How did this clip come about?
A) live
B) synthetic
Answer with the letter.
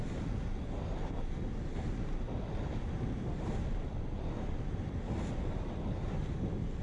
A